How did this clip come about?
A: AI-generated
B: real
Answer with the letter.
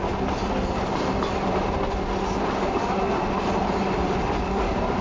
B